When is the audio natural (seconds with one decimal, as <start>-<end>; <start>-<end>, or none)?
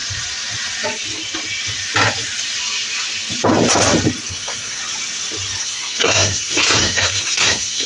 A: 0.0-4.3; 4.8-5.6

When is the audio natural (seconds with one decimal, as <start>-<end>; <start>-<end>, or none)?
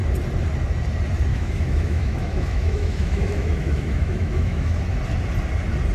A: 0.0-1.3; 4.8-5.9